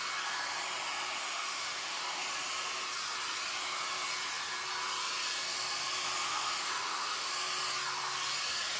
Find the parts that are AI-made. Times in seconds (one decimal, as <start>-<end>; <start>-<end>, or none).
1.2-2.0; 6.3-7.3